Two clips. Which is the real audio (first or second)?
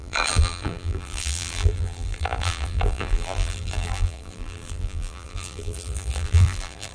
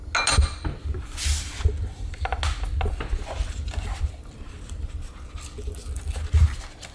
second